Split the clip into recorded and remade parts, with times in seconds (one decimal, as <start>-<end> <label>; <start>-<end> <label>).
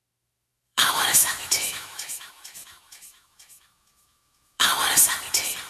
0.0-4.7 remade; 4.7-5.7 recorded